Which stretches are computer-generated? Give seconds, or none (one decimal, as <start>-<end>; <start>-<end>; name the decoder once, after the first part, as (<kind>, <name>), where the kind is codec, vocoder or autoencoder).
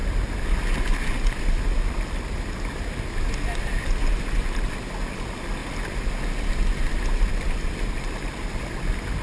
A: none